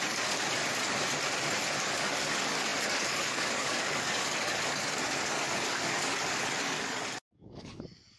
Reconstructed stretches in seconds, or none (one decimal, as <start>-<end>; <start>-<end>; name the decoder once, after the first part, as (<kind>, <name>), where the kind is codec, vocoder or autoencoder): 0.0-0.6 (codec, DAC); 1.8-8.2